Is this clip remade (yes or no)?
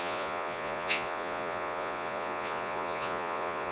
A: yes